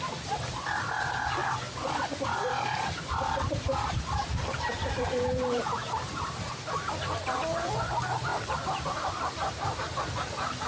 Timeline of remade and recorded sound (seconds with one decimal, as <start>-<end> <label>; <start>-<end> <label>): 0.0-4.2 recorded; 4.2-6.3 remade; 6.3-8.3 recorded; 8.3-9.7 remade; 9.7-10.7 recorded